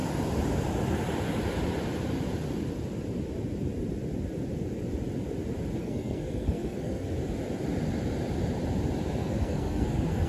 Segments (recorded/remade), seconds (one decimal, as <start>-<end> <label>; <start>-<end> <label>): 0.0-5.8 recorded; 5.8-7.1 remade; 7.1-9.2 recorded; 9.2-10.3 remade